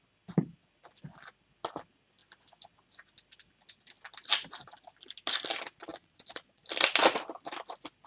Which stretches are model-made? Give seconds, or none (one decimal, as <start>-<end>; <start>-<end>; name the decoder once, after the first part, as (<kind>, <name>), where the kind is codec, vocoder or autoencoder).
5.9-6.6 (vocoder, Vocos)